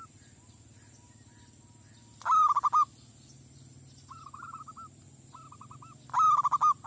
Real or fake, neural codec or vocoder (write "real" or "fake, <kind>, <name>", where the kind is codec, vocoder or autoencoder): real